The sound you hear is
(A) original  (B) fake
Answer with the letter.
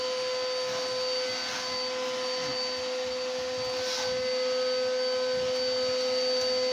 A